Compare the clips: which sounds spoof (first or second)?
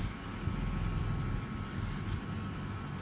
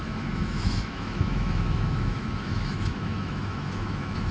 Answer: second